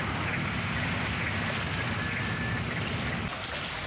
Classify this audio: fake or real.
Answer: real